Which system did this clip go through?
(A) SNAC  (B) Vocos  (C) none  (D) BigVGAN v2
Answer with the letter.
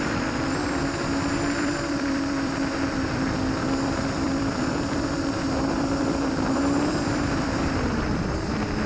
D